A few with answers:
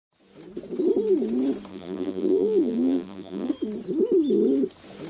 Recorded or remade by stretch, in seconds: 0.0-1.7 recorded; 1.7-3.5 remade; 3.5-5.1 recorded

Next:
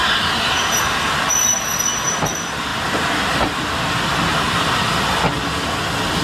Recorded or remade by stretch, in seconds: 0.0-1.3 remade; 1.3-6.2 recorded

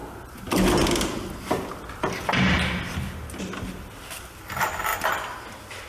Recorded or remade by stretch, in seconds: 0.0-3.4 recorded; 3.4-4.9 remade; 4.9-5.9 recorded

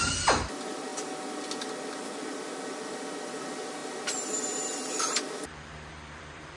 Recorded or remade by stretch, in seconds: 0.0-0.9 remade; 0.9-3.4 recorded; 3.4-6.6 remade

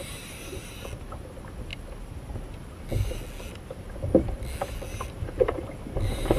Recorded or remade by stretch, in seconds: 0.0-6.4 recorded